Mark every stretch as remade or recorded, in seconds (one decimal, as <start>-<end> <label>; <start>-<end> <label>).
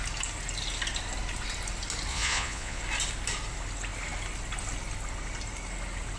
0.0-2.1 recorded; 2.1-2.8 remade; 2.8-6.2 recorded